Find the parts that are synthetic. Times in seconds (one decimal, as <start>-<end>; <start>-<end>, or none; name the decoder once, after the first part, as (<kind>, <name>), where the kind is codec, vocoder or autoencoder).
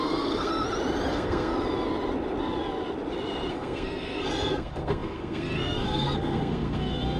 0.0-0.5 (codec, SNAC); 1.1-1.5; 3.5-7.2